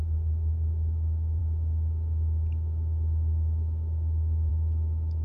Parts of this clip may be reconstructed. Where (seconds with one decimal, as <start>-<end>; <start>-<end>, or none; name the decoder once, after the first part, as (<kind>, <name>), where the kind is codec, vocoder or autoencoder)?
none